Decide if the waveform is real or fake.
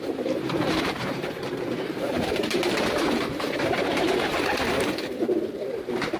fake